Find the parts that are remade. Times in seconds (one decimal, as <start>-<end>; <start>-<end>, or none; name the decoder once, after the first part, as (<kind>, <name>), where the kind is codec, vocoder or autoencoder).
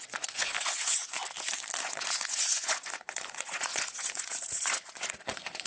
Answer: 0.0-1.2 (vocoder, Vocos); 1.8-5.7